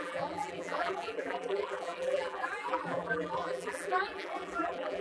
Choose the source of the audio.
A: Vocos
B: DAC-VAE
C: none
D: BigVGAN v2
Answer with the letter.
D